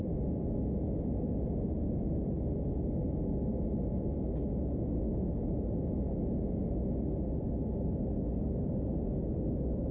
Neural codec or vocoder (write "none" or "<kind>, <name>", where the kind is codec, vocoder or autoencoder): none